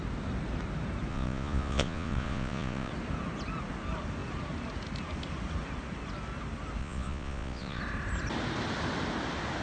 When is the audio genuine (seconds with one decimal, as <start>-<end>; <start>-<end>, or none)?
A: 0.0-1.1; 2.9-6.8; 7.8-9.6